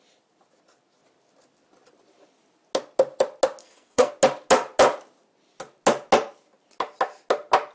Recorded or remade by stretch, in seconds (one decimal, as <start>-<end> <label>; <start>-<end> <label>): 0.0-3.6 recorded; 3.6-4.1 remade; 4.1-7.7 recorded